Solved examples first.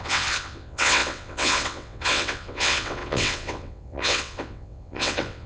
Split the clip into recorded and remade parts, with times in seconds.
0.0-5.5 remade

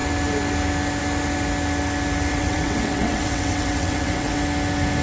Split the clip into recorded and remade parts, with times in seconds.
0.0-2.3 recorded; 2.3-4.4 remade; 4.4-5.0 recorded

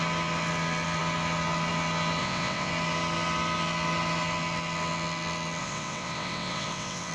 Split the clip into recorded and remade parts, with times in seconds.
0.0-2.2 recorded; 2.2-2.7 remade; 2.7-5.6 recorded; 5.6-7.1 remade

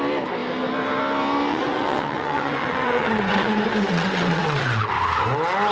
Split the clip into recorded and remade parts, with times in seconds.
0.0-1.5 recorded; 1.5-4.9 remade; 4.9-5.7 recorded

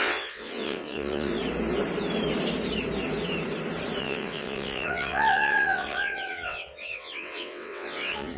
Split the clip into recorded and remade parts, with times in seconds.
0.0-1.3 remade; 1.3-4.0 recorded; 4.0-8.4 remade

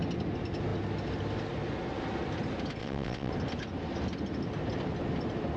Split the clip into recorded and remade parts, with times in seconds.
0.0-2.8 recorded; 2.8-3.3 remade; 3.3-5.6 recorded

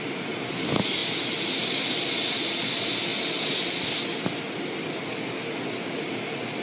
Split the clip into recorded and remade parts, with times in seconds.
0.0-6.6 recorded

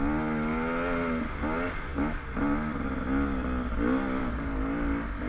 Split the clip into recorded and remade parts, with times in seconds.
0.0-5.3 recorded